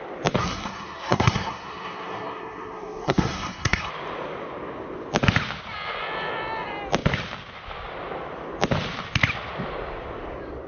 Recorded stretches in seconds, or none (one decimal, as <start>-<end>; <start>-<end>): 0.0-0.4; 3.9-10.7